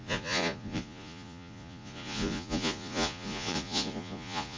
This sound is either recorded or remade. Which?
remade